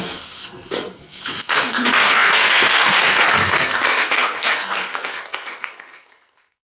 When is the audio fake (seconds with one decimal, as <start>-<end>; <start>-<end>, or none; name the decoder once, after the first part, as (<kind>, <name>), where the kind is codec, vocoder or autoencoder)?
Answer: 0.0-6.6 (codec, SNAC)